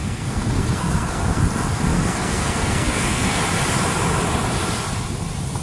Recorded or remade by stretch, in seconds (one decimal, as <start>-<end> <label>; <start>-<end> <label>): 0.0-1.4 remade; 1.4-1.9 recorded; 1.9-3.4 remade; 3.4-5.6 recorded